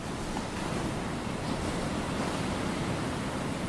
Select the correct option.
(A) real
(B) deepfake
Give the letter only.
A